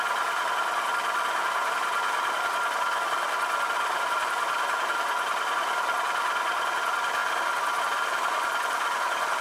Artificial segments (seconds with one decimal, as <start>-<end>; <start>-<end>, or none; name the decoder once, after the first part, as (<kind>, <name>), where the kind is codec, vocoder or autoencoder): none